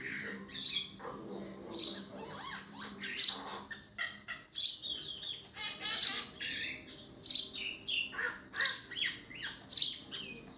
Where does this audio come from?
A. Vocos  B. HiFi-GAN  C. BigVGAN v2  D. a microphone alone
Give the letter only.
D